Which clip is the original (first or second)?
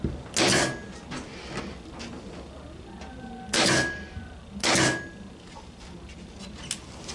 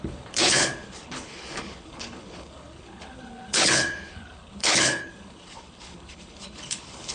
first